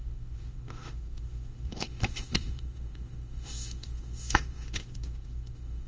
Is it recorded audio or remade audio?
remade